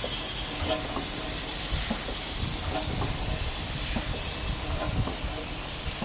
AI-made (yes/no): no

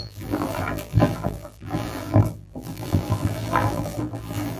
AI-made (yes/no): yes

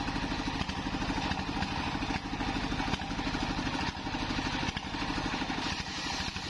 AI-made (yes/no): no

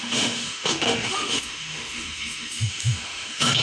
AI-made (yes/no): yes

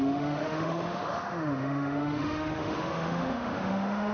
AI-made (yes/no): yes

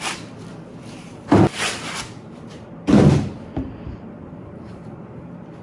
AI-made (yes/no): yes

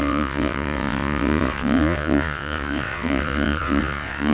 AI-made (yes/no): yes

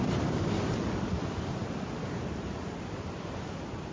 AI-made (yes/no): no